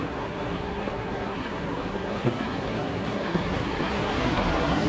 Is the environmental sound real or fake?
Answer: fake